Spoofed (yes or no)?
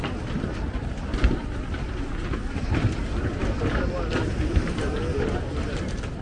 no